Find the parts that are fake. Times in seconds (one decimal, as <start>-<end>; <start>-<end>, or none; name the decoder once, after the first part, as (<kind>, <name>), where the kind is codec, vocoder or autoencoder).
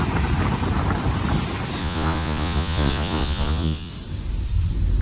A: 1.8-3.9 (vocoder, Vocos)